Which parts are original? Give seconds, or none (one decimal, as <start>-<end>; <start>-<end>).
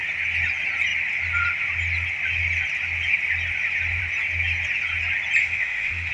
0.0-5.4